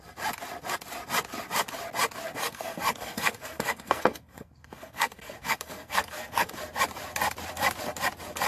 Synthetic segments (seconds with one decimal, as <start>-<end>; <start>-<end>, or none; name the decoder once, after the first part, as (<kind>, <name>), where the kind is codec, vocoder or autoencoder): 2.4-6.5 (codec, SNAC)